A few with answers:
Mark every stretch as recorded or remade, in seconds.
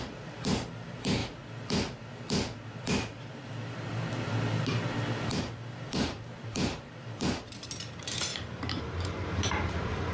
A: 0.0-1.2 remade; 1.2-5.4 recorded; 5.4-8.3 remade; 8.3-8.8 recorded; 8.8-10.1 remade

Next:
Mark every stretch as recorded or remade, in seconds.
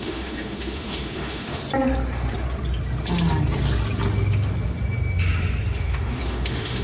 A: 0.0-1.6 remade; 1.6-5.7 recorded; 5.7-6.8 remade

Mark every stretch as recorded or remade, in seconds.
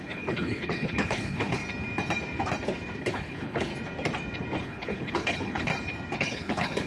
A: 0.0-1.6 remade; 1.6-3.0 recorded; 3.0-3.7 remade; 3.7-4.6 recorded; 4.6-5.7 remade; 5.7-6.2 recorded; 6.2-6.9 remade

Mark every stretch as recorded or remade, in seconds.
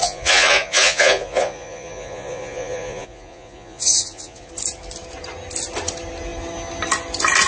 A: 0.0-4.5 remade; 4.5-7.5 recorded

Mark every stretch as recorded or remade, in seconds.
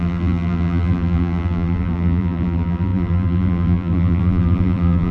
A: 0.0-5.1 remade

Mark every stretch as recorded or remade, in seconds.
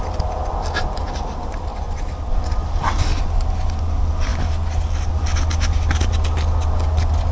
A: 0.0-7.3 recorded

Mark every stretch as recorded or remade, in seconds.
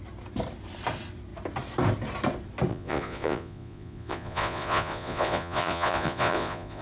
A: 0.0-2.7 recorded; 2.7-6.8 remade